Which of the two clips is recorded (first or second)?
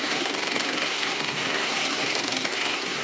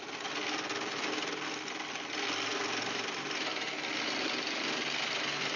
second